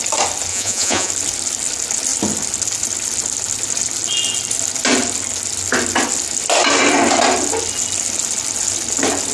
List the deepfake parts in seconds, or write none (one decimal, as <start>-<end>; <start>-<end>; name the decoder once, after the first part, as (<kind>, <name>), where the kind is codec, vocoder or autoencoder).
0.5-1.1 (vocoder, Vocos)